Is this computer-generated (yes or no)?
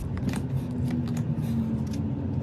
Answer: no